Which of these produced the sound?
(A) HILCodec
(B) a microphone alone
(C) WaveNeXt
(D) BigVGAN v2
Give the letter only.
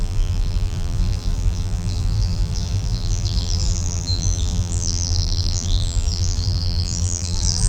D